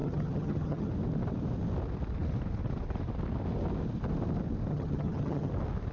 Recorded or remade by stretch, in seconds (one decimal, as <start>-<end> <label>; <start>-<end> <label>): 0.0-0.9 remade; 0.9-4.7 recorded; 4.7-5.5 remade; 5.5-5.9 recorded